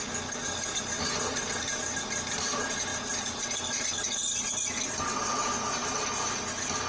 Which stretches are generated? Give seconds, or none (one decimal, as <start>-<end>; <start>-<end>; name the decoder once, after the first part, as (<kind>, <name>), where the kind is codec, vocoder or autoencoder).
none